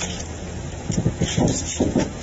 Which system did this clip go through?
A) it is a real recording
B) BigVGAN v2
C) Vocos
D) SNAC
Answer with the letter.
A